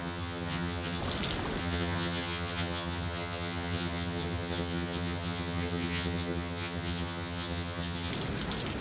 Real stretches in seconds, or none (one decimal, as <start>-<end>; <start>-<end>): 1.0-1.6; 8.1-8.8